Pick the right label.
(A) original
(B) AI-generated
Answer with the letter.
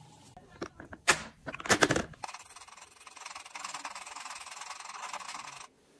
A